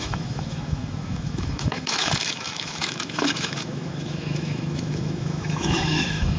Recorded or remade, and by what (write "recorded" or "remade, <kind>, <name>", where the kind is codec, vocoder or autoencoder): remade, autoencoder, DAC-VAE